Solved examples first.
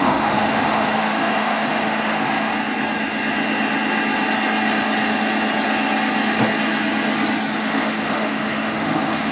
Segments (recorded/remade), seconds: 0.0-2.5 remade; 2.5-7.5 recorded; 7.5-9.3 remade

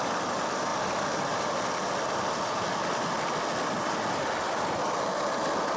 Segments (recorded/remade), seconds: 0.0-5.8 recorded

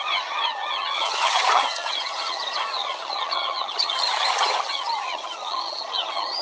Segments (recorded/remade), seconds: 0.0-6.4 remade

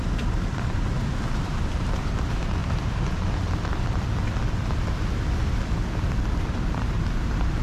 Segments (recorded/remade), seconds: 0.0-2.6 remade; 2.6-6.4 recorded; 6.4-7.6 remade

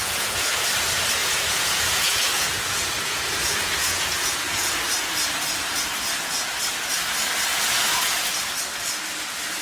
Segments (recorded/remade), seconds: 0.0-0.5 remade; 0.5-1.2 recorded; 1.2-4.8 remade; 4.8-7.5 recorded; 7.5-8.2 remade; 8.2-9.6 recorded

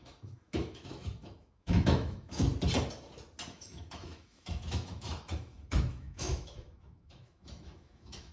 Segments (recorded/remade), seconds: 0.0-2.5 remade; 2.5-3.5 recorded; 3.5-8.3 remade

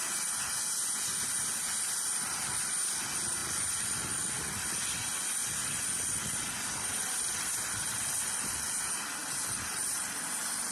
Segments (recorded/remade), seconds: 0.0-9.2 recorded; 9.2-10.2 remade; 10.2-10.7 recorded